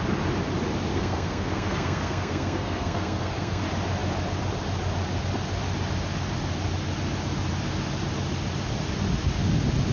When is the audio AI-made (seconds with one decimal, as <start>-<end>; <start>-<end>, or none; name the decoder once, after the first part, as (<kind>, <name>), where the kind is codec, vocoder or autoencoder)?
0.9-3.6 (codec, SNAC)